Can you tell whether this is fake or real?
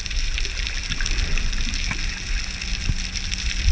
real